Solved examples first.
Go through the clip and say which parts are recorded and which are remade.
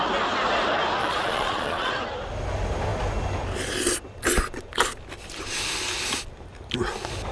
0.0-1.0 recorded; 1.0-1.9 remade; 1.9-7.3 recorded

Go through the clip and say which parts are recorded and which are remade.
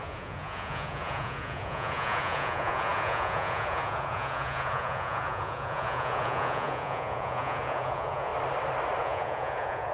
0.0-8.3 remade; 8.3-9.0 recorded; 9.0-9.9 remade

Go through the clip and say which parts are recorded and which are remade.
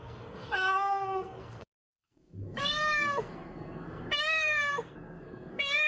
0.0-5.9 remade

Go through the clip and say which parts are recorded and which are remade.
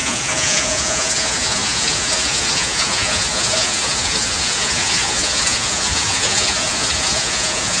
0.0-7.8 remade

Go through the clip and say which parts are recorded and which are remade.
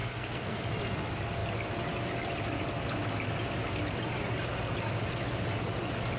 0.0-0.6 remade; 0.6-6.2 recorded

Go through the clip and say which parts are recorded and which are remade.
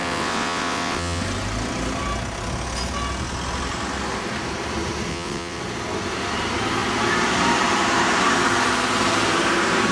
0.0-1.2 remade; 1.2-5.1 recorded; 5.1-5.6 remade; 5.6-9.9 recorded